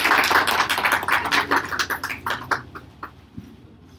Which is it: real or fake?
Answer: real